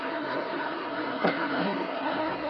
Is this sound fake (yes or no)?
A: yes